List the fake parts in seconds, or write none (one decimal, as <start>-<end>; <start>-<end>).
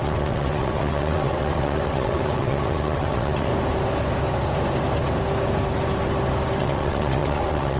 0.0-3.5; 6.6-7.8